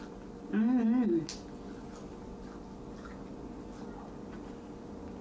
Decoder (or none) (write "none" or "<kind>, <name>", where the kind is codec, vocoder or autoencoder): none